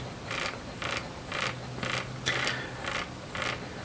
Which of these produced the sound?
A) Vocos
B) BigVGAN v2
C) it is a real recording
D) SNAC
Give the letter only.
C